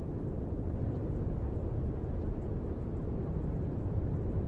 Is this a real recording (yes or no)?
yes